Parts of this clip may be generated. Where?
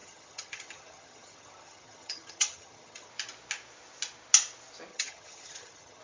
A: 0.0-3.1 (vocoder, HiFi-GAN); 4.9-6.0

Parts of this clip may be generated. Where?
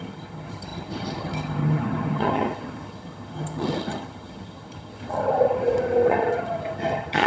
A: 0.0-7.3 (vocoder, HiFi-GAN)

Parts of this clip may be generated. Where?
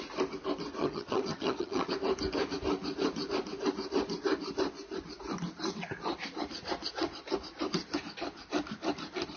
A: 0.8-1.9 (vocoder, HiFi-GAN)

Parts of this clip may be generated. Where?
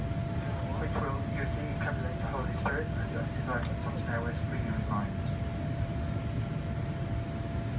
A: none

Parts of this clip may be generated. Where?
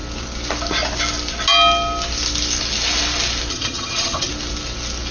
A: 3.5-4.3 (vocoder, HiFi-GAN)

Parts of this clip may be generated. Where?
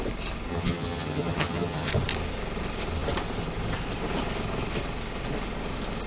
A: 0.5-1.9 (vocoder, HiFi-GAN)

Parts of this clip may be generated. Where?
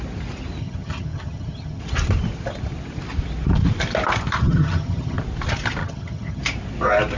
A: 0.6-1.8 (vocoder, HiFi-GAN); 4.4-5.2; 5.8-6.4